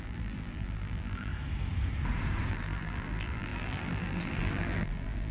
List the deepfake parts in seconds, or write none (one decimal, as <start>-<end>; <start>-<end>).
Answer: 0.0-1.3; 2.5-5.3